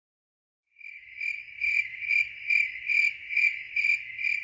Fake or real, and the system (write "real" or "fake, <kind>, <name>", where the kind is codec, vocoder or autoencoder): real